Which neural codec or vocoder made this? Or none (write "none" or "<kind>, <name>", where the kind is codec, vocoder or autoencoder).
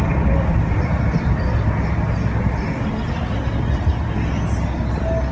none